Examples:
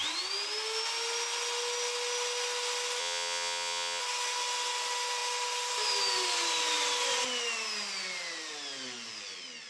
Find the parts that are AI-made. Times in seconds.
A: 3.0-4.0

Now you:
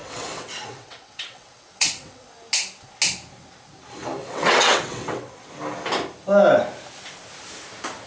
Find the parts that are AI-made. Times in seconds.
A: 0.0-2.3; 4.2-5.5

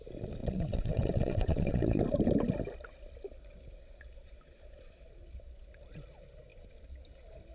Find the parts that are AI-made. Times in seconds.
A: 0.4-2.0

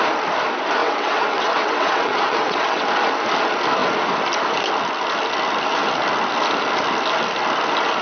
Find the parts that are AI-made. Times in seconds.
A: 0.8-2.9

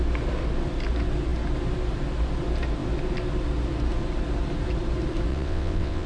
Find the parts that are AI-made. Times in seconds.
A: 5.3-6.1

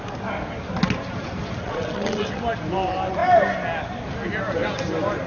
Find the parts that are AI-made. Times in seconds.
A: 1.6-2.4

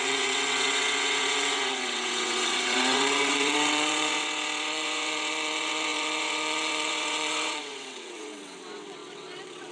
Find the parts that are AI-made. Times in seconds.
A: 0.0-9.7

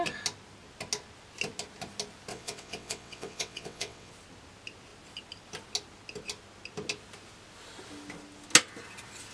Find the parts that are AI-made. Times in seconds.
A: 2.3-4.1